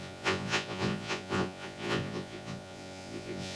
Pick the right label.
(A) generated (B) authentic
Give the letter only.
A